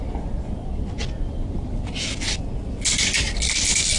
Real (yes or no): yes